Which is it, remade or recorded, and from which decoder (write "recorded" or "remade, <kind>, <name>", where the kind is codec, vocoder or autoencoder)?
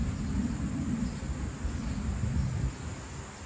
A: recorded